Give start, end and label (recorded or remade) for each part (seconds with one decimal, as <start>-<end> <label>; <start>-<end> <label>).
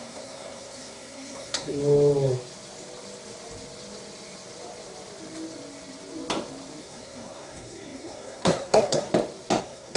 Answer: 0.0-1.8 remade; 1.8-6.8 recorded; 6.8-9.1 remade; 9.1-9.6 recorded; 9.6-10.0 remade